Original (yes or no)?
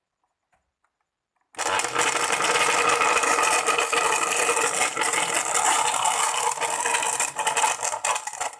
yes